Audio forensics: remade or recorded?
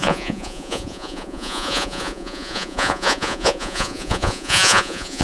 remade